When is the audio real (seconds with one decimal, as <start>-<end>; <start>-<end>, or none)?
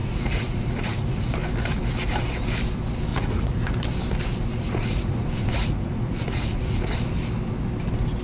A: 1.3-3.1; 3.7-4.5; 6.9-8.2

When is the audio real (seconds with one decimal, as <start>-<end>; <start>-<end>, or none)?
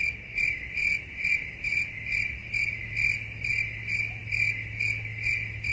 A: 0.0-5.7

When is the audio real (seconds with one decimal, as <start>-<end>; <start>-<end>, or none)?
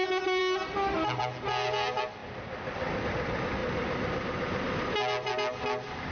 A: 0.0-6.1